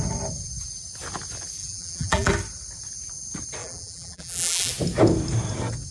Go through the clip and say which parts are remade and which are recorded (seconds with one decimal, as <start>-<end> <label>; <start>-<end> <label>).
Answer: 0.0-1.6 recorded; 1.6-2.3 remade; 2.3-3.6 recorded; 3.6-4.7 remade; 4.7-5.9 recorded